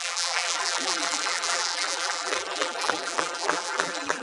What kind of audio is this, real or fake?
fake